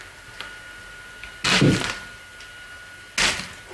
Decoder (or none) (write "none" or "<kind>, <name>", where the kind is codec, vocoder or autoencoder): none